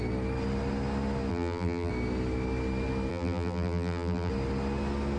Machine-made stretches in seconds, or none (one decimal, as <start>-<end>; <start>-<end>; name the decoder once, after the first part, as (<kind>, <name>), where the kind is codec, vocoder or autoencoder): 1.3-1.9 (vocoder, BigVGAN v2); 3.1-4.3